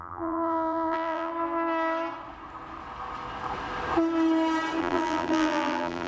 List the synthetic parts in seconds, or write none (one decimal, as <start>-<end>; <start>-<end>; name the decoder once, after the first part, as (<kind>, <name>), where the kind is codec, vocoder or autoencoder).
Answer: 0.0-1.3 (vocoder, BigVGAN v2); 4.8-6.1